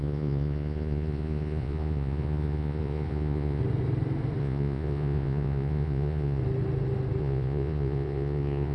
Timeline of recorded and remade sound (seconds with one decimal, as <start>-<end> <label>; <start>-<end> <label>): 0.0-3.6 remade; 3.6-4.4 recorded; 4.4-6.4 remade; 6.4-7.2 recorded; 7.2-8.7 remade